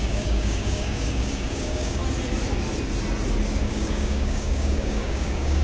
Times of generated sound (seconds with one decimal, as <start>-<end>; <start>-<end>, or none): 0.0-2.0; 3.6-5.6